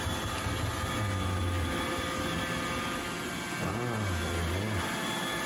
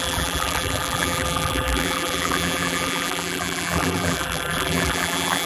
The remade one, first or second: second